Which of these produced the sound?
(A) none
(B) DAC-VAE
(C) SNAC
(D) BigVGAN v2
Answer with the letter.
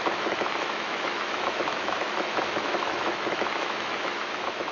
B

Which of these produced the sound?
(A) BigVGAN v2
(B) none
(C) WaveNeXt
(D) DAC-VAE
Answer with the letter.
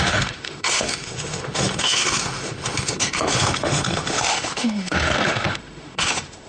D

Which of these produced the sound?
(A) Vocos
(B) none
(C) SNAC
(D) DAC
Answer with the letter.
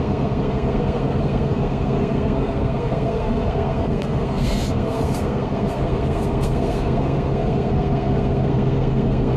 C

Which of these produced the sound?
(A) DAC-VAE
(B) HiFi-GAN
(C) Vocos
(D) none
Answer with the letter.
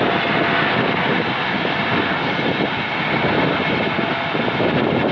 D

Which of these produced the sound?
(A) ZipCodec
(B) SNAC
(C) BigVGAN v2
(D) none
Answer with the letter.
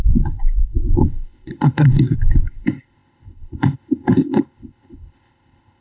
A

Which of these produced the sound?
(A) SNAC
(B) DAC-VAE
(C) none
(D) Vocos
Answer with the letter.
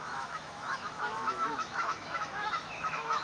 B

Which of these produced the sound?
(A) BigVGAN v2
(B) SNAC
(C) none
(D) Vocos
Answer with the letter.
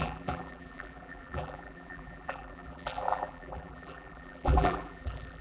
A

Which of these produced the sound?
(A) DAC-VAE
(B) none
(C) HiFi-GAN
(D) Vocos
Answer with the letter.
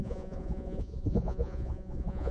D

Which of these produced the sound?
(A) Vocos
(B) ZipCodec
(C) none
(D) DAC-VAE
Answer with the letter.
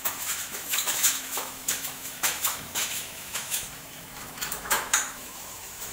D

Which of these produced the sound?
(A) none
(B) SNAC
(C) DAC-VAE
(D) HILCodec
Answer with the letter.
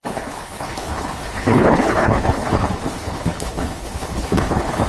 D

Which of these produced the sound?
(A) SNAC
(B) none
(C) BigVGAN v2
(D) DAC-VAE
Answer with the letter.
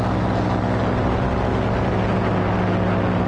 B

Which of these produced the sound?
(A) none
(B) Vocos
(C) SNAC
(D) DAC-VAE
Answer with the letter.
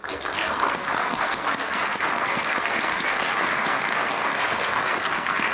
C